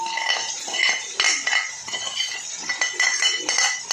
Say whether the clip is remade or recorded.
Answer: recorded